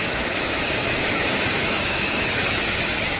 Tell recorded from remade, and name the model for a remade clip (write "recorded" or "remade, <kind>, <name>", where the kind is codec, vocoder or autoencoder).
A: remade, autoencoder, DAC-VAE